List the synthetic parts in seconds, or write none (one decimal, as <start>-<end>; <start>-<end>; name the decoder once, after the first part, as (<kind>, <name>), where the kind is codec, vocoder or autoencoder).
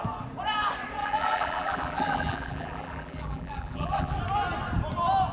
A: 1.0-4.2 (vocoder, BigVGAN v2)